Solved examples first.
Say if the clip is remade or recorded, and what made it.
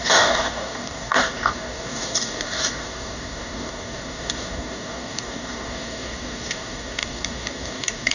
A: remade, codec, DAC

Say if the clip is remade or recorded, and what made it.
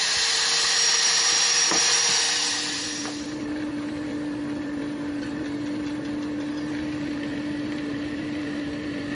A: remade, vocoder, BigVGAN v2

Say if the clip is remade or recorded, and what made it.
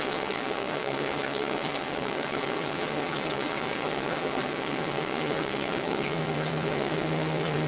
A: remade, vocoder, WaveNeXt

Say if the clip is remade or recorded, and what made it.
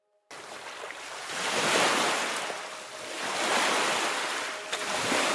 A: recorded